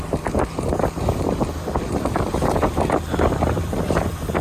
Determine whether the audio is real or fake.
fake